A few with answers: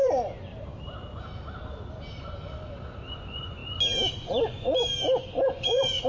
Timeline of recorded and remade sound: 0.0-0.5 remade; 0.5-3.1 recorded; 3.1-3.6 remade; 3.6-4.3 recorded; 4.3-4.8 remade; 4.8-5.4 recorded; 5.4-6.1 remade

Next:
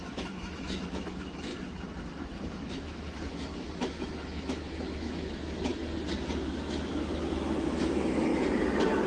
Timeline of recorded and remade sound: 0.0-1.5 remade; 1.5-2.5 recorded; 2.5-5.7 remade; 5.7-6.4 recorded; 6.4-8.3 remade; 8.3-9.1 recorded

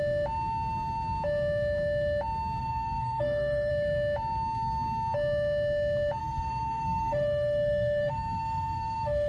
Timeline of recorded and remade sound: 0.0-2.6 recorded; 2.6-3.7 remade; 3.7-6.2 recorded; 6.2-9.3 remade

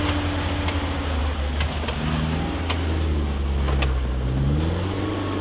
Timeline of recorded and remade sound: 0.0-5.4 recorded

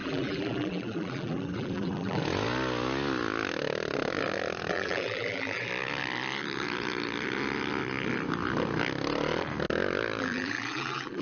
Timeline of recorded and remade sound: 0.0-2.2 remade; 2.2-4.7 recorded; 4.7-5.7 remade; 5.7-10.2 recorded; 10.2-11.2 remade

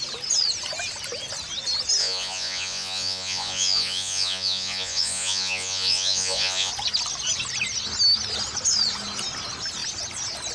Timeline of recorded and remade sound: 0.0-2.0 recorded; 2.0-6.7 remade; 6.7-10.5 recorded

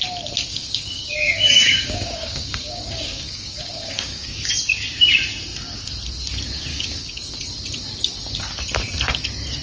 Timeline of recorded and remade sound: 0.0-0.5 recorded; 0.5-4.5 remade; 4.5-6.7 recorded; 6.7-7.3 remade; 7.3-9.6 recorded